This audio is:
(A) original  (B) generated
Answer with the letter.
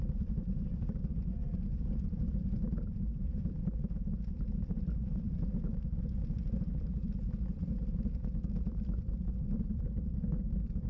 A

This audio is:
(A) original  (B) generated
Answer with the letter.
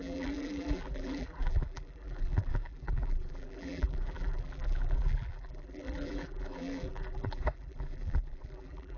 B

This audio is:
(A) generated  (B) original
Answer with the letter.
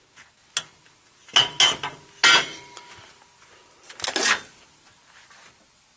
B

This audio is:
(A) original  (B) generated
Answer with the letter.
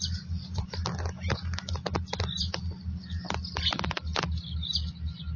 B